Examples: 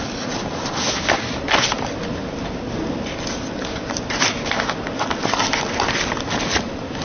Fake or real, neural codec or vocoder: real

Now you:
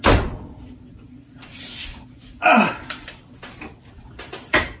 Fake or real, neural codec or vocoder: fake, vocoder, BigVGAN v2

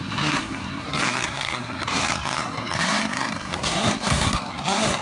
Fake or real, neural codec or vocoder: fake, codec, SNAC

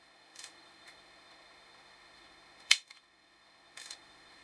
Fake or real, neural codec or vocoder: fake, autoencoder, DAC-VAE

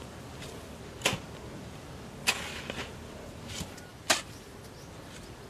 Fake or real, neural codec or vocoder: real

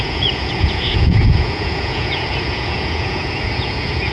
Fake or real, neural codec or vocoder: fake, vocoder, Vocos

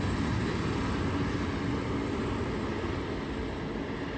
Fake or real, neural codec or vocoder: real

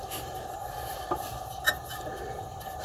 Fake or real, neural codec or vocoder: fake, vocoder, BigVGAN v2